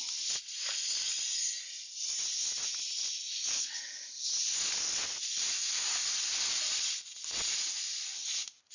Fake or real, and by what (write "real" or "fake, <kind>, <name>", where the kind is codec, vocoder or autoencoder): real